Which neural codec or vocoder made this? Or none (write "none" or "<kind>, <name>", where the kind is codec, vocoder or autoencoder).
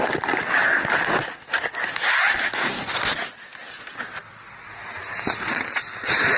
none